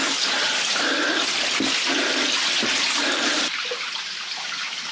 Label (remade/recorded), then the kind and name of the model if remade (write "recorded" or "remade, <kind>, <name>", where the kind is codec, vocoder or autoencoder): recorded